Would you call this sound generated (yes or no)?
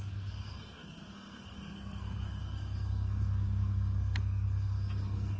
yes